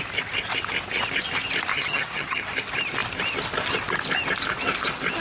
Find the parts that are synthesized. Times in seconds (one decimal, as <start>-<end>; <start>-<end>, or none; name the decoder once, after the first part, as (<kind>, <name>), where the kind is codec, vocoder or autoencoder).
1.7-2.4 (vocoder, HiFi-GAN)